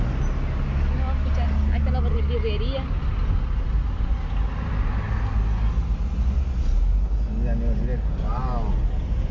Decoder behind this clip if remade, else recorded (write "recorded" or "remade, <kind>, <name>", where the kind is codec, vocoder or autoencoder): recorded